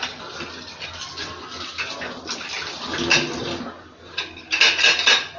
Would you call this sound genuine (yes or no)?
yes